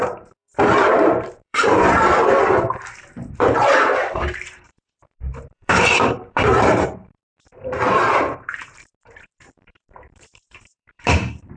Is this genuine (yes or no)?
no